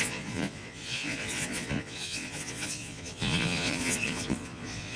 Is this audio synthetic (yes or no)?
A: yes